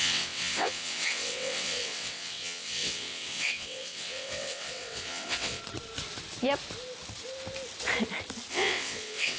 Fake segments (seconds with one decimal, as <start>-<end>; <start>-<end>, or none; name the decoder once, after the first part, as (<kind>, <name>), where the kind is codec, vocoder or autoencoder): 0.0-5.6 (vocoder, WaveNeXt); 8.5-9.4